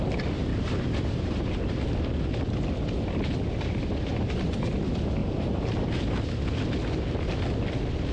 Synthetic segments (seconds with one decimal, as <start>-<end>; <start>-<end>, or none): 0.5-1.5; 4.1-4.8; 5.2-6.9